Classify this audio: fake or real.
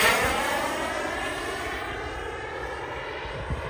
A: real